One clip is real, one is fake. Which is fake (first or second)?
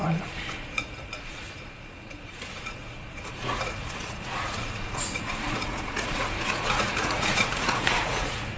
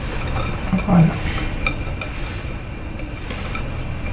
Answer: first